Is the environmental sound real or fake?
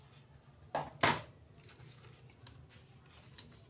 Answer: real